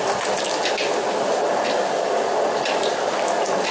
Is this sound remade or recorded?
recorded